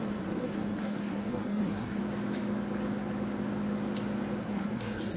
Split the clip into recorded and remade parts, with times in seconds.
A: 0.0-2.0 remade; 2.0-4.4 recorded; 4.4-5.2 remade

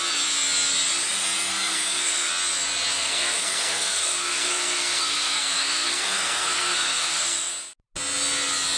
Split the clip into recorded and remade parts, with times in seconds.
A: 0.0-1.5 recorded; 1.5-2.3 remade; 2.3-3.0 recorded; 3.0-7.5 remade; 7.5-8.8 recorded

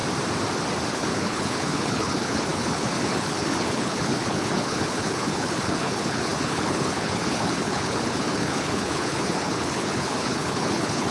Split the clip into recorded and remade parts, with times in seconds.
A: 0.0-0.9 recorded; 0.9-11.1 remade